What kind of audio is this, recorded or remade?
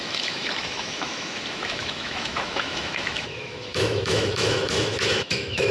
remade